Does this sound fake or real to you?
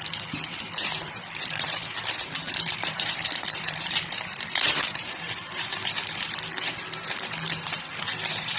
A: fake